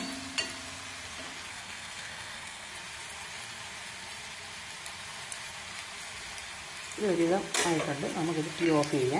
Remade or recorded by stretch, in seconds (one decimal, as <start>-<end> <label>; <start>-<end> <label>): 0.0-1.5 recorded; 1.5-2.7 remade; 2.7-9.2 recorded